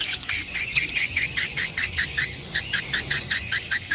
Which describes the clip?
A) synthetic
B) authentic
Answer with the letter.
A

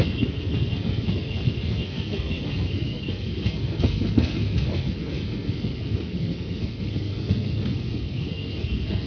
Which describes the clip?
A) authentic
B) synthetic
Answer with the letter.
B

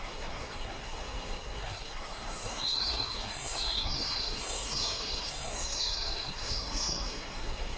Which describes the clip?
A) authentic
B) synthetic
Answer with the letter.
B